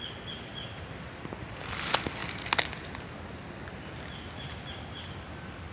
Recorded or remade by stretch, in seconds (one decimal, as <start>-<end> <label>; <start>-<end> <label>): 0.0-5.7 recorded